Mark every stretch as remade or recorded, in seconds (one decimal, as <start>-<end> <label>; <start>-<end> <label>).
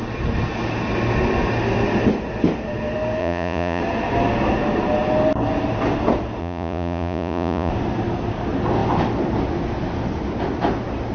0.0-3.2 recorded; 3.2-3.8 remade; 3.8-6.4 recorded; 6.4-7.7 remade; 7.7-11.1 recorded